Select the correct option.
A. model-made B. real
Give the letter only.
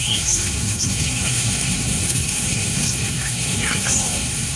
A